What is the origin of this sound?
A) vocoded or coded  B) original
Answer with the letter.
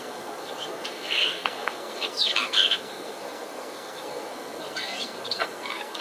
A